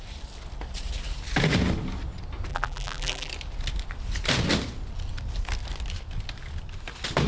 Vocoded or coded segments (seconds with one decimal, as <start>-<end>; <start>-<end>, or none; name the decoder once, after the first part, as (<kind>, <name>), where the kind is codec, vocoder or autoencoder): 2.5-3.3 (vocoder, BigVGAN v2)